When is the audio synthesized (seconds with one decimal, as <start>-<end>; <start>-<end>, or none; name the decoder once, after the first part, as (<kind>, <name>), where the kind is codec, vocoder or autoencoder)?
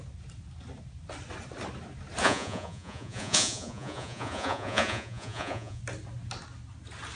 2.2-5.8 (vocoder, Vocos)